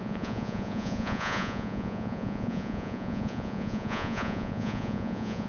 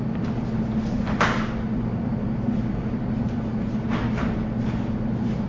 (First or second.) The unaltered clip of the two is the second